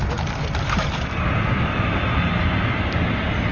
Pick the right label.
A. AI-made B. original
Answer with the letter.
B